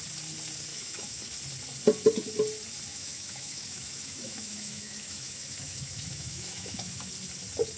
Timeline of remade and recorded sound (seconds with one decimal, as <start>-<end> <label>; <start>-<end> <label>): 0.0-0.7 recorded; 0.7-1.2 remade; 1.2-2.9 recorded; 2.9-7.1 remade; 7.1-7.8 recorded